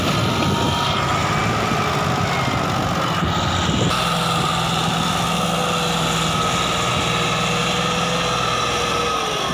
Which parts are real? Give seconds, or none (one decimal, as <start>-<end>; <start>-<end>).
0.0-9.5